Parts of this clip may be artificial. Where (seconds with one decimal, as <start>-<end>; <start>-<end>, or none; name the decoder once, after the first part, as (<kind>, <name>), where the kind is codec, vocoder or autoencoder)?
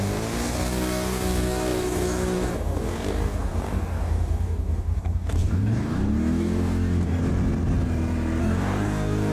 0.0-7.2 (codec, DAC); 8.4-9.3